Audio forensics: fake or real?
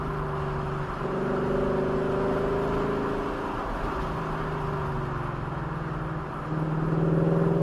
real